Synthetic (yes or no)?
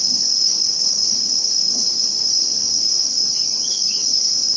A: yes